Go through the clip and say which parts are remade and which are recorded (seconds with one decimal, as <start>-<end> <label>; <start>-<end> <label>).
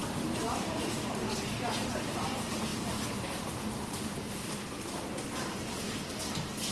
0.0-0.9 remade; 0.9-2.7 recorded; 2.7-6.2 remade; 6.2-6.7 recorded